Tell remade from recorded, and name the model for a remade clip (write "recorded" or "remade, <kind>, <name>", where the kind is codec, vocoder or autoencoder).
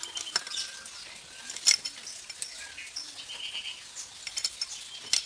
recorded